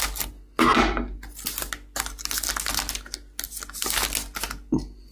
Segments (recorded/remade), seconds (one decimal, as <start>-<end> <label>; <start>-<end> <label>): 0.0-5.1 recorded